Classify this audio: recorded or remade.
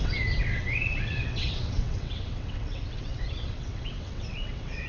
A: remade